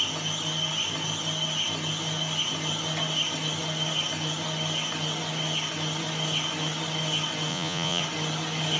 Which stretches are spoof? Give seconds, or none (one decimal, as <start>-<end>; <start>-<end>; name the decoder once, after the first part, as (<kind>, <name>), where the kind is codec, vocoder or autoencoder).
7.5-8.0 (vocoder, Vocos)

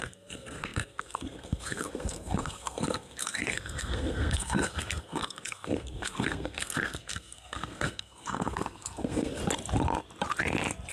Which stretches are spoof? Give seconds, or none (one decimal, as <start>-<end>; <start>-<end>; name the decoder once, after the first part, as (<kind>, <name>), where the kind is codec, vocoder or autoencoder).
0.0-9.4 (codec, SNAC)

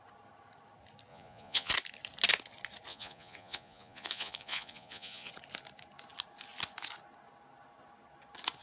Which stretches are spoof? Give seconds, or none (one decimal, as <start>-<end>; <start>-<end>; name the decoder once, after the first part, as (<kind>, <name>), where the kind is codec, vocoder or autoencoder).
1.1-1.7 (vocoder, Vocos); 2.9-5.3

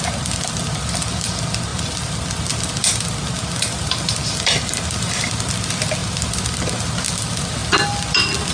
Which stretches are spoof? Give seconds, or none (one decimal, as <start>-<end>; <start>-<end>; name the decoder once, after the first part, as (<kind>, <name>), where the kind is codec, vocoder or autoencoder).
none

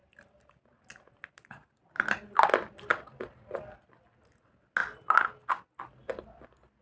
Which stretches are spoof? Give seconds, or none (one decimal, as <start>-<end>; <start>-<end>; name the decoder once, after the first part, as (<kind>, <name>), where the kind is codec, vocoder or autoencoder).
none

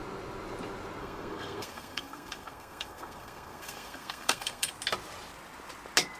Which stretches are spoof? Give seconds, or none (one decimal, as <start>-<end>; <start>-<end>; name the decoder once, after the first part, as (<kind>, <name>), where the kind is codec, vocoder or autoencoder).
1.0-4.7 (codec, SNAC)

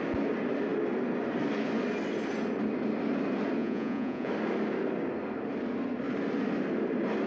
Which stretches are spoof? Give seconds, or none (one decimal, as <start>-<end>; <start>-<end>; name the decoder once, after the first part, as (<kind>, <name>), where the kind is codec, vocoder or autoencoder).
3.6-4.3 (vocoder, Vocos)

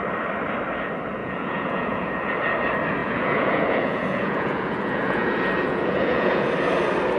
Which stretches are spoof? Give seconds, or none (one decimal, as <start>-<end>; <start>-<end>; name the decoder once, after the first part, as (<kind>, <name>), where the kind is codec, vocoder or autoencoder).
1.2-2.3 (vocoder, Vocos); 3.0-6.5